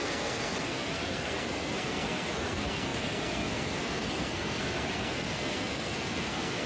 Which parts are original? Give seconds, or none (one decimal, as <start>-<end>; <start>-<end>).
none